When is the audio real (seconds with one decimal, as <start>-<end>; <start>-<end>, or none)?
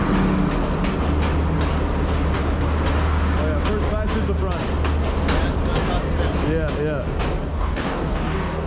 0.0-7.5